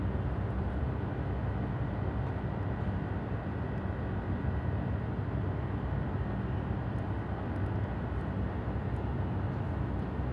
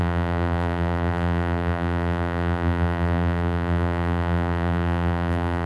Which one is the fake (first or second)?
second